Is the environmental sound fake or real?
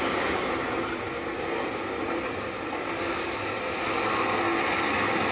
real